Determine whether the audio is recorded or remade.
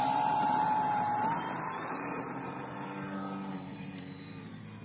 remade